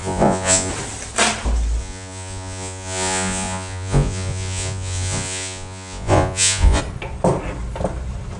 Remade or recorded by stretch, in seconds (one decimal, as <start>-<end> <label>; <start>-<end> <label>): 0.0-0.7 remade; 0.7-1.8 recorded; 1.8-6.8 remade; 6.8-8.4 recorded